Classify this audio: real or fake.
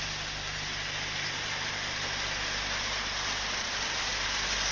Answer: real